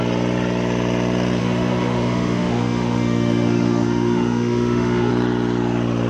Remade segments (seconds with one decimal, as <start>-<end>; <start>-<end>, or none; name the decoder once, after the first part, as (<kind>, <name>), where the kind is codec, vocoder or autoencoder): 1.4-5.1 (autoencoder, DAC-VAE)